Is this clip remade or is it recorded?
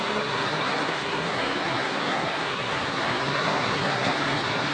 remade